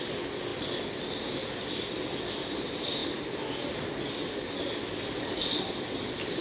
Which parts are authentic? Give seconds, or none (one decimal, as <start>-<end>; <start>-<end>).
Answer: 0.0-6.4